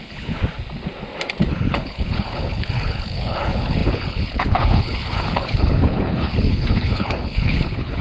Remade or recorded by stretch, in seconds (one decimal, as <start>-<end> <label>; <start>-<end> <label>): 0.0-0.4 remade; 0.4-1.5 recorded; 1.5-8.0 remade